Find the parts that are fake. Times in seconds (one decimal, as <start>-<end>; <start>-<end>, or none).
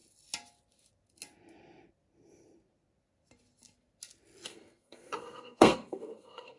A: 4.5-6.6